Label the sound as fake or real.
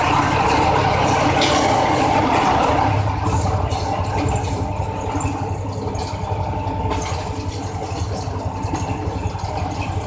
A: real